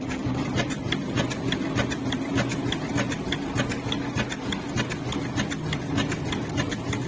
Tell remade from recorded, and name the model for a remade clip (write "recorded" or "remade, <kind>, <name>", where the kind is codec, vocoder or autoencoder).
recorded